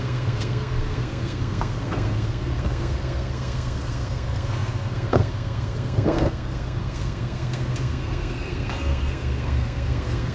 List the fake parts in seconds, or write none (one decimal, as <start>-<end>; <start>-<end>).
0.0-10.3